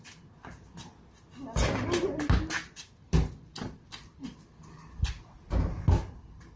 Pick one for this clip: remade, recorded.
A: recorded